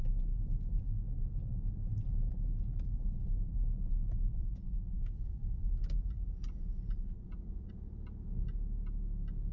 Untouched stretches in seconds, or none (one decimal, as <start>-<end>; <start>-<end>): 0.0-3.0; 3.5-4.3; 7.7-9.5